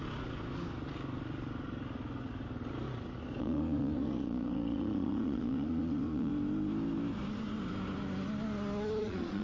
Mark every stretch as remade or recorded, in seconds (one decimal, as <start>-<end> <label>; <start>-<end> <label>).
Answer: 0.0-3.4 recorded; 3.4-6.3 remade; 6.3-9.0 recorded; 9.0-9.4 remade